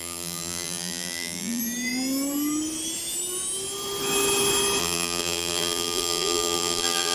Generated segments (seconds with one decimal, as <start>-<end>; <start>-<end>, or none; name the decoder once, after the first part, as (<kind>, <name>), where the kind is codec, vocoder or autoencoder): 0.0-1.6 (vocoder, BigVGAN v2); 4.8-7.1